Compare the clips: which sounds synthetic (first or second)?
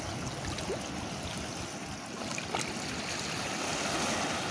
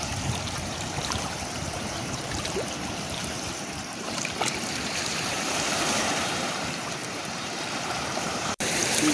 second